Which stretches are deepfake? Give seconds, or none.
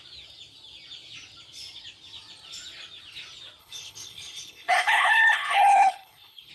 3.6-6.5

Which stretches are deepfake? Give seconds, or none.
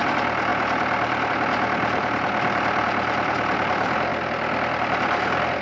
0.0-4.1; 5.0-5.6